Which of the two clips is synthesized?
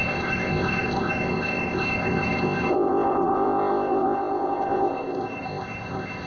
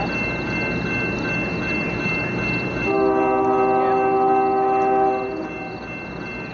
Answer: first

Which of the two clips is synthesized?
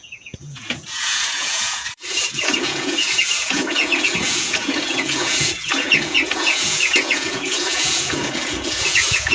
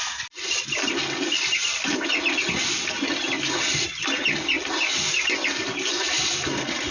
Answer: first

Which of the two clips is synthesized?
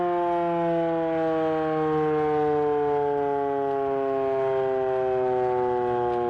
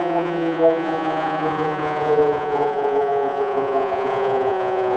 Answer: second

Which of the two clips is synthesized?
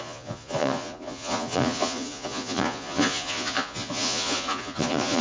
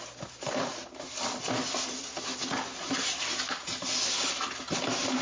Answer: first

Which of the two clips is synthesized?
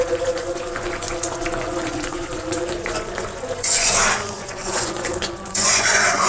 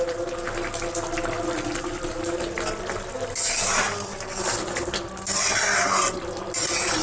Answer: first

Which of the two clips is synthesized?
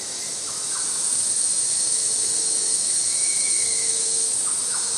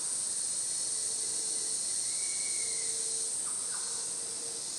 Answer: first